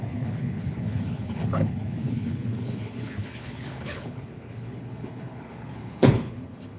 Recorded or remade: remade